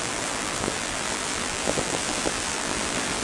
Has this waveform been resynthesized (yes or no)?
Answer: yes